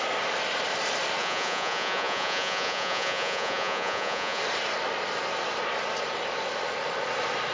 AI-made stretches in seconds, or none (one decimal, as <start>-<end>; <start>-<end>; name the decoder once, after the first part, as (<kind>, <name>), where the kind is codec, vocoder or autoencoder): 1.2-4.4 (vocoder, Vocos)